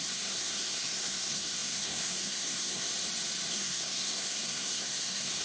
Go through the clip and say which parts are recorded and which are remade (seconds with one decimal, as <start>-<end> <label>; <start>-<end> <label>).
0.0-2.9 remade; 2.9-3.5 recorded; 3.5-5.4 remade

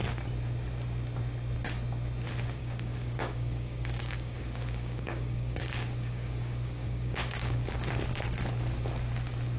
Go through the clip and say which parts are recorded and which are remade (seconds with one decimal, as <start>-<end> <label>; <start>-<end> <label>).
0.0-2.6 recorded; 2.6-7.9 remade; 7.9-9.6 recorded

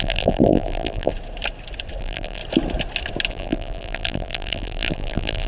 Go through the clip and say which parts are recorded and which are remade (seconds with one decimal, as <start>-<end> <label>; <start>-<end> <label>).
0.0-1.1 remade; 1.1-2.0 recorded; 2.0-2.4 remade; 2.4-3.3 recorded; 3.3-5.5 remade

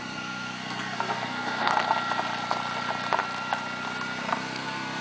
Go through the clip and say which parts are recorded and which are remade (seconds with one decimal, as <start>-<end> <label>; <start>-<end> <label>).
0.0-1.7 remade; 1.7-4.2 recorded; 4.2-5.0 remade

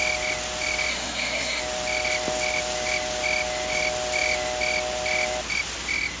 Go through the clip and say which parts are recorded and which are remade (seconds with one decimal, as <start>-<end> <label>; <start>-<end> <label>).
0.0-0.9 recorded; 0.9-1.6 remade; 1.6-6.2 recorded

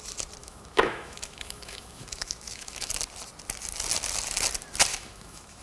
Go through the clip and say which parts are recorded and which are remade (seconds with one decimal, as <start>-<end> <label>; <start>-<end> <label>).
0.0-0.4 recorded; 0.4-2.9 remade; 2.9-4.9 recorded; 4.9-5.6 remade